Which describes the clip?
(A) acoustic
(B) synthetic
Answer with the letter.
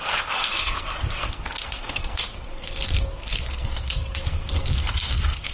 B